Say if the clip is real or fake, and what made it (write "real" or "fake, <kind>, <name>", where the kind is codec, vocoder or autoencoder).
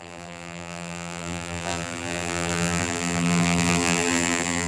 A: fake, vocoder, BigVGAN v2